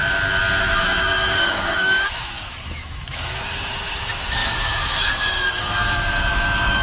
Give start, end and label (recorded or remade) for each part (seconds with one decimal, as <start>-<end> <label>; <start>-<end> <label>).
0.0-0.6 recorded; 0.6-6.8 remade